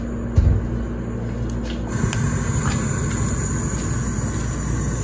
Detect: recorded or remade recorded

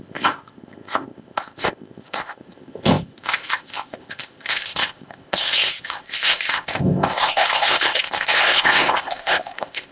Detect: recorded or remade remade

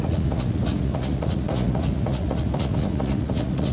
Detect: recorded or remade remade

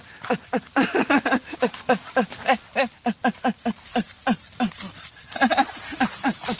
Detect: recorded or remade recorded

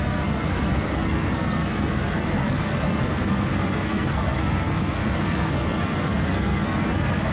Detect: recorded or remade remade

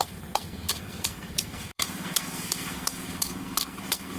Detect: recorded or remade remade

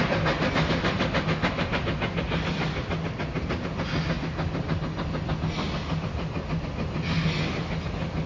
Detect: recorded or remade recorded